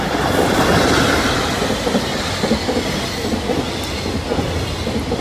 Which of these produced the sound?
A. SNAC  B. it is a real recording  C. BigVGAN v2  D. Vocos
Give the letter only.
B